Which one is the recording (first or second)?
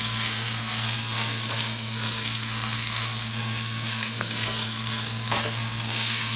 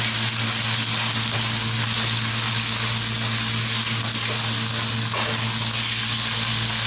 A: second